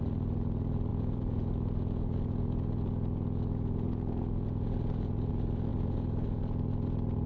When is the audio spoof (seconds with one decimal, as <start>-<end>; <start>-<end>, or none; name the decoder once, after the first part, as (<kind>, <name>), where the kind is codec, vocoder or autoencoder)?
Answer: 0.9-5.3 (vocoder, Vocos); 5.7-6.4